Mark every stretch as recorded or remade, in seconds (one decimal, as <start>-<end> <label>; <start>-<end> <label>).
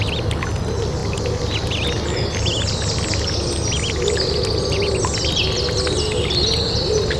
0.0-7.2 recorded